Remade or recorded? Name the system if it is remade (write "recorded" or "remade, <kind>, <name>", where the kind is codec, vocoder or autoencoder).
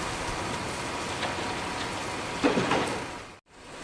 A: recorded